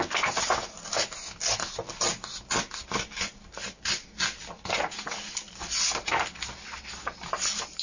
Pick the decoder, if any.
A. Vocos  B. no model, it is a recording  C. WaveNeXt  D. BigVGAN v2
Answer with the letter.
B